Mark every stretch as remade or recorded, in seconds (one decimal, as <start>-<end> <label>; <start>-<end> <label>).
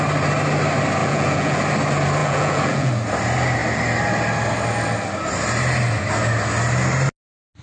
0.0-1.0 recorded; 1.0-1.6 remade; 1.6-2.2 recorded; 2.2-2.9 remade; 2.9-7.6 recorded